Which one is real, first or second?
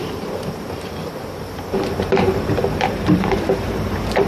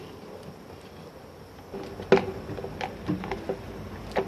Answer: second